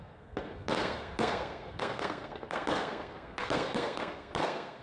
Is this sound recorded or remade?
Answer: remade